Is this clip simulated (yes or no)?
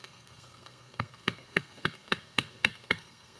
yes